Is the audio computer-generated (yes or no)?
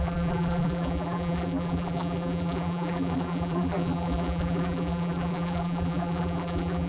yes